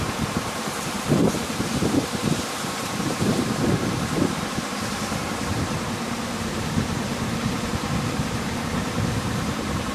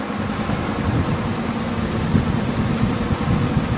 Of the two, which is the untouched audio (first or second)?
second